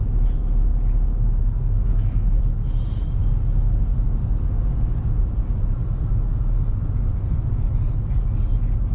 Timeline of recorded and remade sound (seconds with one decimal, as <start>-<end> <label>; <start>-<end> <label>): 0.0-1.4 recorded; 1.4-2.4 remade; 2.4-8.9 recorded